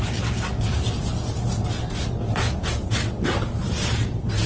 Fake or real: real